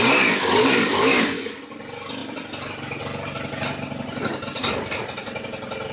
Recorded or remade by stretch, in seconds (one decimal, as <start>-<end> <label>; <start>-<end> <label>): 0.0-0.6 recorded; 0.6-1.6 remade; 1.6-5.9 recorded